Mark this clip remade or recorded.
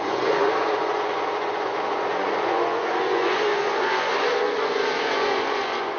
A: remade